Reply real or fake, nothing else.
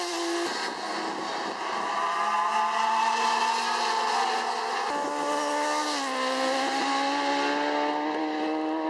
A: real